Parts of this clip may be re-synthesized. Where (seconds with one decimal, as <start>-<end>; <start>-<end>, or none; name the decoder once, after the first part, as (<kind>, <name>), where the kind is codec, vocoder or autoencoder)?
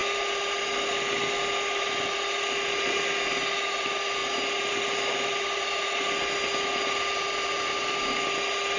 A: none